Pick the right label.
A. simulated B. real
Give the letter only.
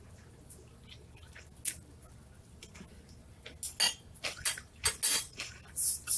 B